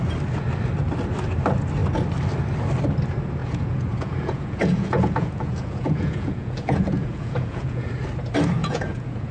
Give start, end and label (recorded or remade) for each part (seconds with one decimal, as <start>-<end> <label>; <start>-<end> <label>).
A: 0.0-3.4 recorded; 3.4-7.9 remade; 7.9-8.6 recorded; 8.6-9.3 remade